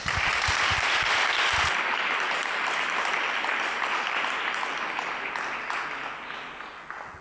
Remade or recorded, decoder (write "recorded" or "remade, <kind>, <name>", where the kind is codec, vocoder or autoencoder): recorded